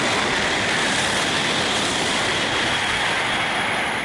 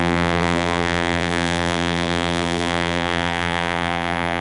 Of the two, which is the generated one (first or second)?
second